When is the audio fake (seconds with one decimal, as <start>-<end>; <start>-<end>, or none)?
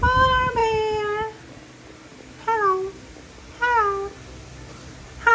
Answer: none